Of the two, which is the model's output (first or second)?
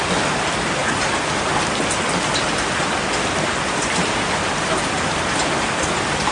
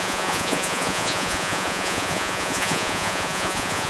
second